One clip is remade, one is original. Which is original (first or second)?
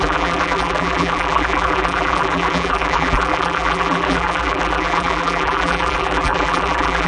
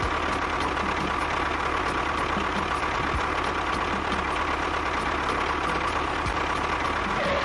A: second